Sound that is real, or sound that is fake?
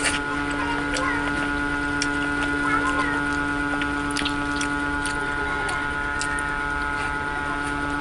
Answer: real